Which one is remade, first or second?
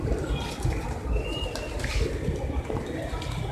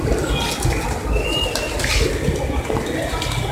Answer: first